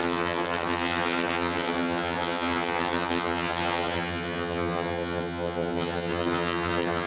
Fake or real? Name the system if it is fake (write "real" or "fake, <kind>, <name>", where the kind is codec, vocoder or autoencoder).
fake, vocoder, HiFi-GAN